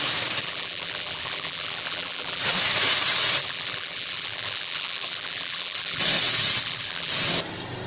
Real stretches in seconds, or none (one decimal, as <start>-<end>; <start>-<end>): 0.0-0.4; 2.4-3.4; 6.0-6.6; 7.1-7.9

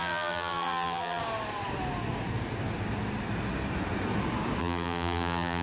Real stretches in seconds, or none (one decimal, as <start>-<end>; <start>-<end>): 1.2-4.6

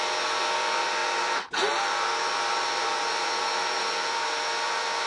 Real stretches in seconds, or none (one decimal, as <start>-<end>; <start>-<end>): 0.0-5.1

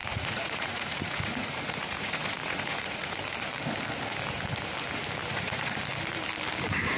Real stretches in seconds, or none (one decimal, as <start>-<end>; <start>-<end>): 3.2-5.3; 5.8-7.0